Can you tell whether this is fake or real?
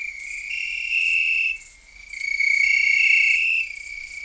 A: real